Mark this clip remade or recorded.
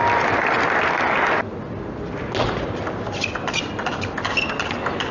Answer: recorded